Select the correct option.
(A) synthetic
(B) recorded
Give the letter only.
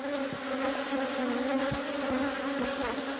B